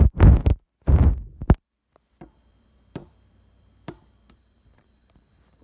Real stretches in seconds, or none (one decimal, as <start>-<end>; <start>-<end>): 0.5-1.9